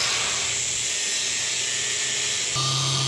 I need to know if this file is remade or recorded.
recorded